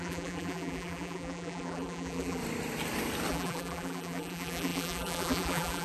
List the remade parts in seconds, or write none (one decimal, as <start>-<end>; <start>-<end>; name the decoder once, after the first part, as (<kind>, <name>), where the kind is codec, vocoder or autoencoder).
0.0-2.4 (vocoder, BigVGAN v2); 3.3-5.8